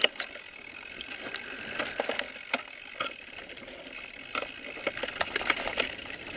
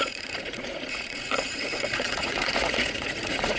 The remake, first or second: second